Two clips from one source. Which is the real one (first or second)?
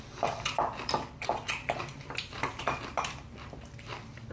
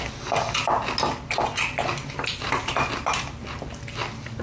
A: second